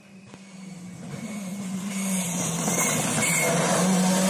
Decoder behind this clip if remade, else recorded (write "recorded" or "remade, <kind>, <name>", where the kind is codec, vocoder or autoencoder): recorded